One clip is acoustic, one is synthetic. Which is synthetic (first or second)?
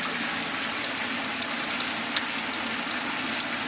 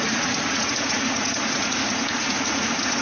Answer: second